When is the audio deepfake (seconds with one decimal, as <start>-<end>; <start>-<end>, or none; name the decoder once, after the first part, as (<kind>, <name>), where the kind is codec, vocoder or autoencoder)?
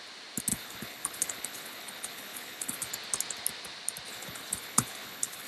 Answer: 0.5-2.9 (codec, HILCodec); 4.1-5.5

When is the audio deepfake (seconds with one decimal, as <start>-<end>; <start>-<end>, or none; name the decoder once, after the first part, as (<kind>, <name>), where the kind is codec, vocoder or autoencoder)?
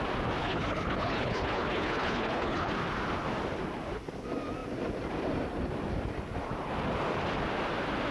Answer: 0.4-2.7 (codec, HILCodec)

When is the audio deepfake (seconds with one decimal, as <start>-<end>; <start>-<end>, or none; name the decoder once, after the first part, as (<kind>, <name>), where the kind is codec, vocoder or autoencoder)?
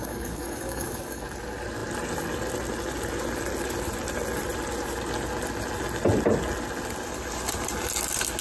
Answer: 0.0-1.2 (codec, DAC)